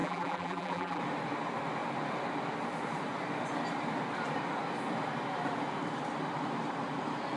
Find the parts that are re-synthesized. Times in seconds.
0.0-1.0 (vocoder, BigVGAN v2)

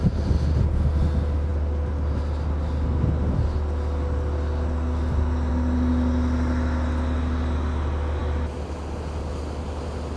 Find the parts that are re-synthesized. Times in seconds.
none

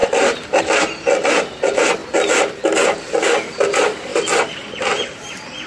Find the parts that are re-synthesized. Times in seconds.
0.0-0.6 (vocoder, BigVGAN v2)

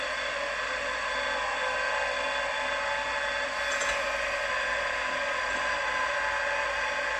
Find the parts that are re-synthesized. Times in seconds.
3.8-5.6 (vocoder, BigVGAN v2)

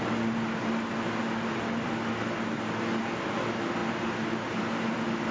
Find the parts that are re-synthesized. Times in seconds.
none

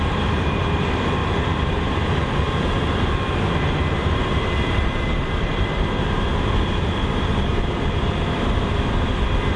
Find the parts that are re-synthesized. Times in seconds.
0.0-1.2 (vocoder, BigVGAN v2); 3.9-6.3; 6.8-7.5